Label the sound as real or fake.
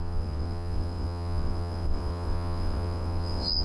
fake